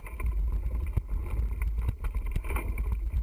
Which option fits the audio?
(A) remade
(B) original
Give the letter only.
A